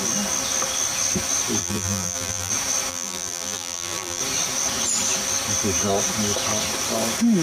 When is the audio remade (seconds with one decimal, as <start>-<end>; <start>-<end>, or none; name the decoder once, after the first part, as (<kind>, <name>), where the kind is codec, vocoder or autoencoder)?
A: 1.6-2.5 (vocoder, BigVGAN v2); 2.9-4.2